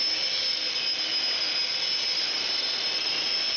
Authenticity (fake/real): real